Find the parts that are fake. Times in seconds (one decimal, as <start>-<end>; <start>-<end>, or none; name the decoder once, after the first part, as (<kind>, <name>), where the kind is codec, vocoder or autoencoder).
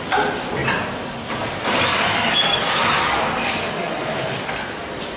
1.9-4.5 (codec, DAC)